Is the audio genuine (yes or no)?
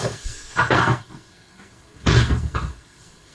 no